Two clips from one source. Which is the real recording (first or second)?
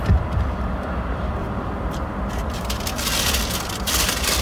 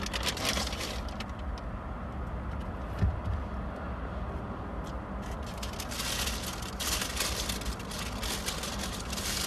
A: second